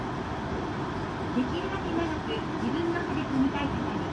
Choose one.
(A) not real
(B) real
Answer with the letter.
B